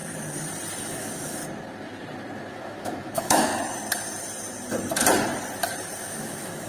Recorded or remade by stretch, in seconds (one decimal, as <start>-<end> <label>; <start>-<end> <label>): 0.0-0.8 recorded; 0.8-1.4 remade; 1.4-2.5 recorded; 2.5-3.5 remade; 3.5-6.0 recorded; 6.0-6.7 remade